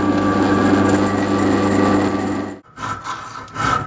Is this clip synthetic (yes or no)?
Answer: no